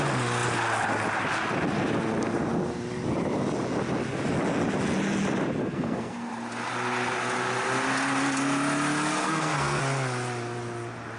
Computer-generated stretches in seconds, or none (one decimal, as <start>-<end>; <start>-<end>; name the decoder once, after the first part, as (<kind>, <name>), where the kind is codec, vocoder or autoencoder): 5.6-6.3 (codec, SNAC); 9.2-9.8